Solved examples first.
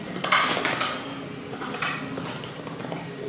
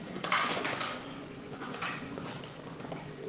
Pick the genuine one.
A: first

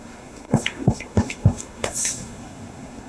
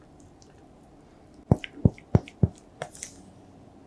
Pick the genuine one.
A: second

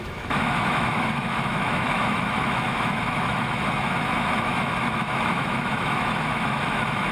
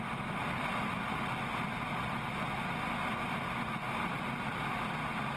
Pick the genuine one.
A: second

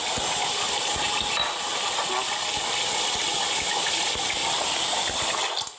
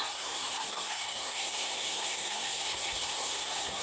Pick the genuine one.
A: first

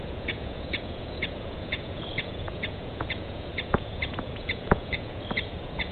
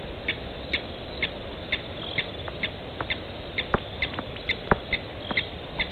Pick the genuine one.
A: second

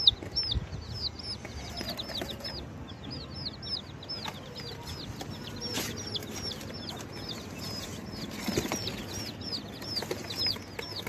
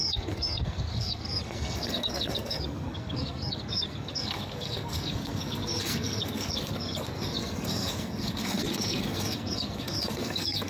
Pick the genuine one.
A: first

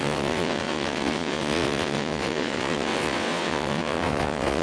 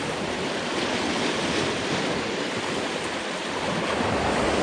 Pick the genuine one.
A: second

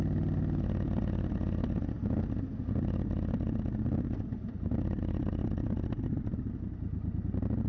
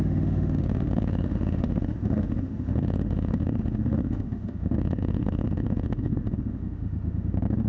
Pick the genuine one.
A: first